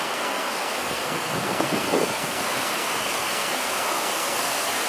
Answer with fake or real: fake